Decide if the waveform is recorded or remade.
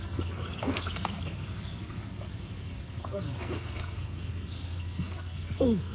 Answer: remade